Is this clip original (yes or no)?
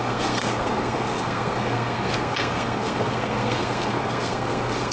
no